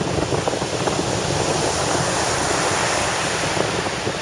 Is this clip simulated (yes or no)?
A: no